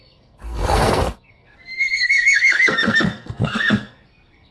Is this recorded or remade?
remade